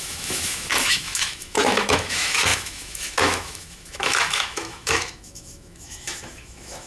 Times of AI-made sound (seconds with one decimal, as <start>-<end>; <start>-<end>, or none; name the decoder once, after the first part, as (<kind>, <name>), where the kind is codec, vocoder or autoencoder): 0.0-6.9 (autoencoder, DAC-VAE)